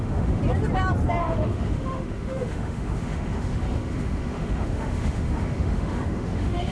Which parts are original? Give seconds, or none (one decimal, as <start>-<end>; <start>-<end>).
0.4-1.2